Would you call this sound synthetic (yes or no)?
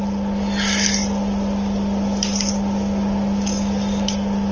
no